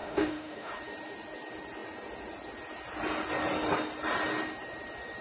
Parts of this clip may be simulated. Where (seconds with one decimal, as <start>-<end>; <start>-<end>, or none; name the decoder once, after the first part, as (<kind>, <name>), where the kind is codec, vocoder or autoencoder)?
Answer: 0.0-0.7 (autoencoder, DAC-VAE)